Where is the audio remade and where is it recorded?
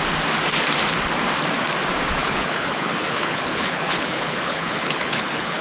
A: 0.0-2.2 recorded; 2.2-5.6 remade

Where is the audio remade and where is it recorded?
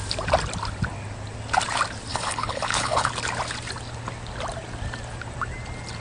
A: 0.0-2.1 recorded; 2.1-3.1 remade; 3.1-6.0 recorded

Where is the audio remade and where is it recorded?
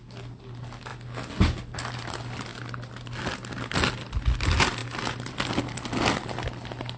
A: 0.0-7.0 recorded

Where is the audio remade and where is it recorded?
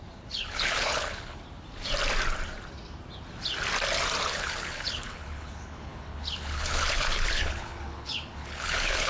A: 0.0-1.4 remade; 1.4-4.3 recorded; 4.3-9.1 remade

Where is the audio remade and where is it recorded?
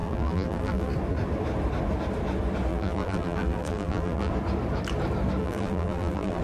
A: 0.0-0.9 remade; 0.9-2.7 recorded; 2.7-4.3 remade; 4.3-5.4 recorded; 5.4-6.4 remade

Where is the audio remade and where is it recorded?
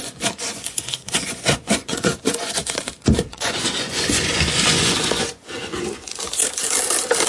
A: 0.0-6.4 remade; 6.4-7.3 recorded